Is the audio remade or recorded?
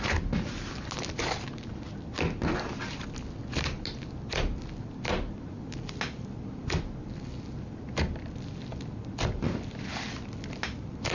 recorded